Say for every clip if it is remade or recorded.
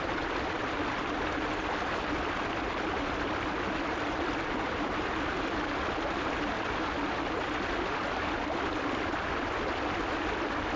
recorded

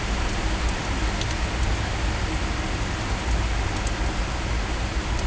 recorded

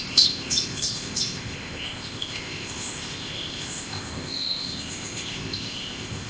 remade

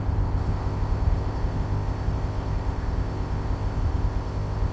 remade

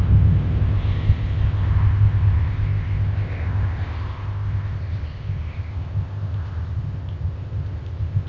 remade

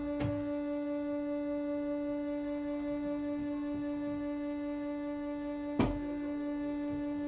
recorded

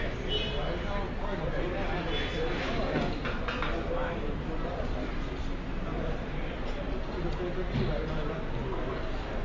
recorded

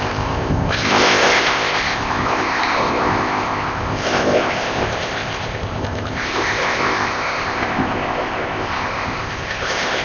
remade